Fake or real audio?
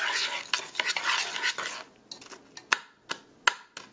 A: real